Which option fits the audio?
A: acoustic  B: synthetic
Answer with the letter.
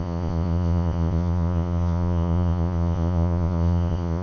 B